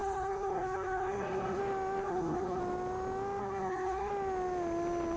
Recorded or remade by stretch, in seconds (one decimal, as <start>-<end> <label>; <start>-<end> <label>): 0.0-1.6 remade; 1.6-2.0 recorded; 2.0-2.6 remade; 2.6-3.4 recorded; 3.4-4.1 remade; 4.1-5.2 recorded